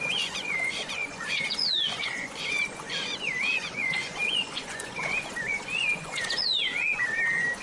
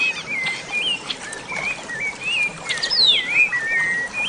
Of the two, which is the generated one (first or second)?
first